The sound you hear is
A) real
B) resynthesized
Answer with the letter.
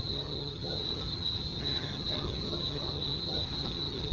B